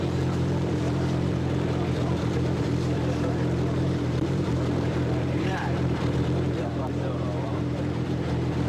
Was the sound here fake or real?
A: fake